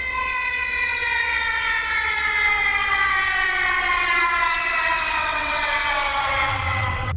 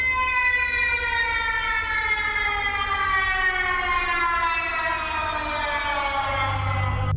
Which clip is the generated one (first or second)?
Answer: first